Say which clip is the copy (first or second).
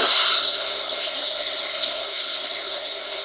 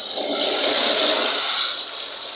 first